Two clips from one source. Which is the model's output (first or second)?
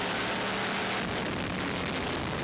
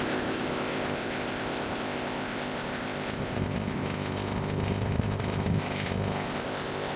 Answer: second